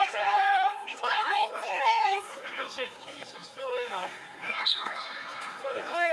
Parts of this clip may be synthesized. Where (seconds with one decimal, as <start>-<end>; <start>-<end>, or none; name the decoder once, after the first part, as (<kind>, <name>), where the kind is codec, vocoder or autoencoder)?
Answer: 0.0-6.1 (codec, SNAC)